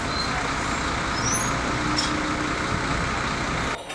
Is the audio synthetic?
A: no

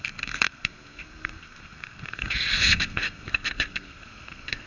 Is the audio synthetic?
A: yes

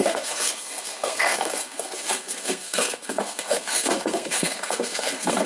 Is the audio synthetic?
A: yes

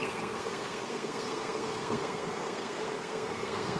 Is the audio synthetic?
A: yes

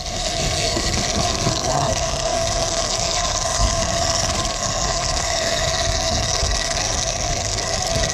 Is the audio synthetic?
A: yes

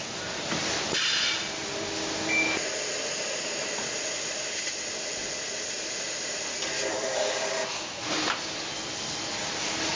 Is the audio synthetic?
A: no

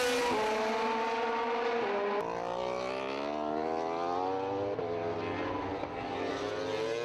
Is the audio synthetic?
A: no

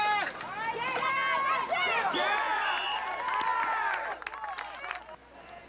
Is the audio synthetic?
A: no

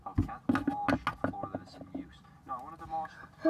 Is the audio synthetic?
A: no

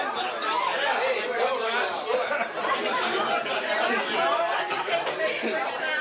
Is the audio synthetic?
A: no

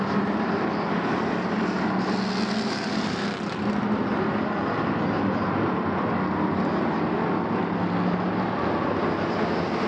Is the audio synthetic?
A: no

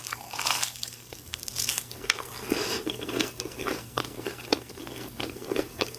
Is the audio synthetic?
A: yes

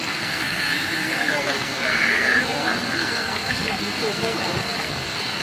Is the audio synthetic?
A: yes